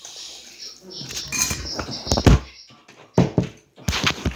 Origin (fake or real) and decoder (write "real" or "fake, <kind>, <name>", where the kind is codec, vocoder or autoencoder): real